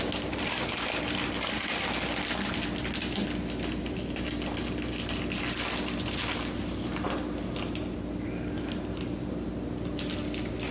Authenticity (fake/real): real